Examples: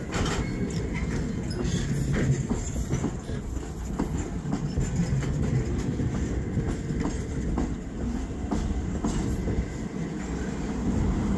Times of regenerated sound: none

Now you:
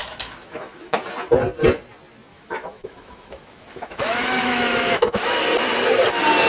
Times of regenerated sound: 0.0-1.0; 2.3-5.4

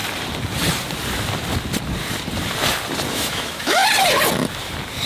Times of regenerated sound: 3.1-3.8

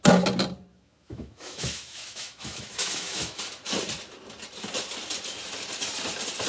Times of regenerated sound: 0.7-3.4

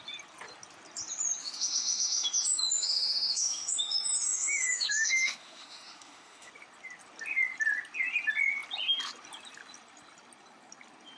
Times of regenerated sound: 1.4-6.5